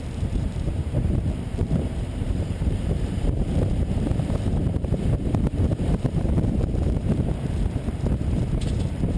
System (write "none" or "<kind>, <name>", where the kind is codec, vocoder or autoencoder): vocoder, BigVGAN v2